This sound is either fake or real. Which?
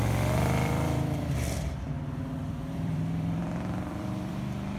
fake